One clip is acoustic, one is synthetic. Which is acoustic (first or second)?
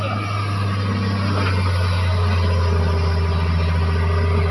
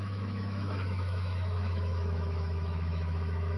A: first